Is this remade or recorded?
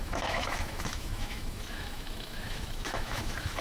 remade